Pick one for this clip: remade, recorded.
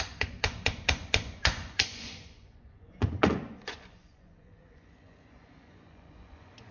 remade